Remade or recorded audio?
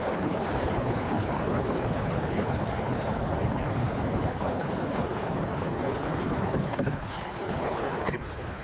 remade